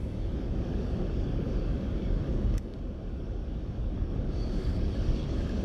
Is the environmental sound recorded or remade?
remade